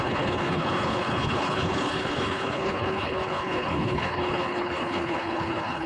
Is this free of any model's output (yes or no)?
no